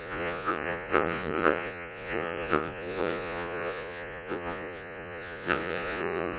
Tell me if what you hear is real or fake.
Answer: fake